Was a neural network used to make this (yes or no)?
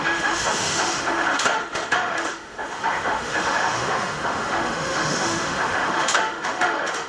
yes